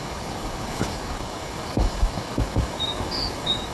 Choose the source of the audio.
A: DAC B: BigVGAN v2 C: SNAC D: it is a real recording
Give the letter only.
A